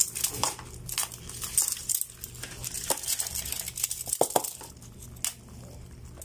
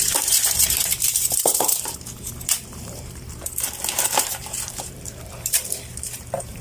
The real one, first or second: first